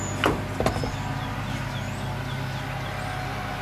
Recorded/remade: recorded